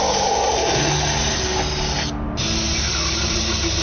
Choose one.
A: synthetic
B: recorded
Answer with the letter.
B